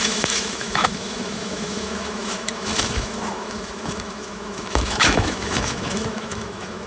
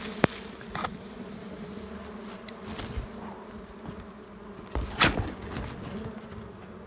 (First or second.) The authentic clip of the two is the second